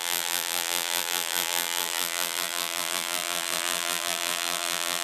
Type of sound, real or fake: fake